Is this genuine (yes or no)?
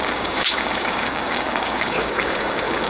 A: no